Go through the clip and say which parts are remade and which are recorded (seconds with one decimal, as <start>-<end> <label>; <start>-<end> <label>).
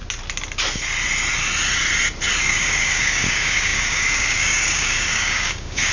0.0-2.4 recorded; 2.4-5.9 remade